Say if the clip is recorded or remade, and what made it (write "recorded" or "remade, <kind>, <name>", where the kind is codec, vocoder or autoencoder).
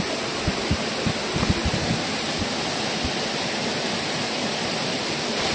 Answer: recorded